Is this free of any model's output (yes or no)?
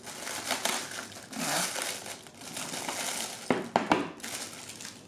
yes